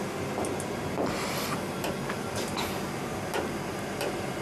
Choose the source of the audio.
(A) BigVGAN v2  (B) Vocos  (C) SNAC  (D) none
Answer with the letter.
D